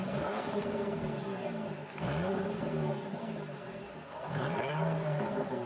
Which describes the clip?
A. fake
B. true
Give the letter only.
A